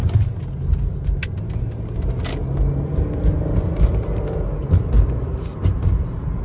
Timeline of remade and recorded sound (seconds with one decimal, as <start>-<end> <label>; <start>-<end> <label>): 0.0-3.8 recorded; 3.8-6.4 remade

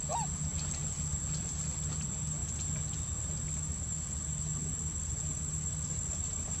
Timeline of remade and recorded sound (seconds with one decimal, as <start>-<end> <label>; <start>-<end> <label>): 0.0-6.6 recorded

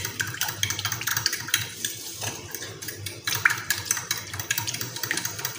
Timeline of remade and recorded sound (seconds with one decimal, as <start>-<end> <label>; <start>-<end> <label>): 0.0-5.6 remade

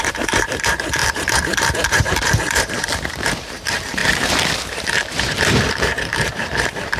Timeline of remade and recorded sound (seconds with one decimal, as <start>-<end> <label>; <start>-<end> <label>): 0.0-7.0 remade

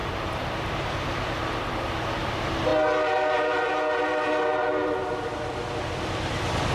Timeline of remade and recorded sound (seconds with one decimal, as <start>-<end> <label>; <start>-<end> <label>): 0.0-0.7 remade; 0.7-6.7 recorded

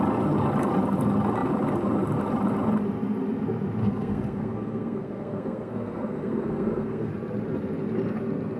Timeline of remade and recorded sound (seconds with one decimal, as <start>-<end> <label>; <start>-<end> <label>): 0.0-3.8 recorded; 3.8-7.1 remade; 7.1-8.6 recorded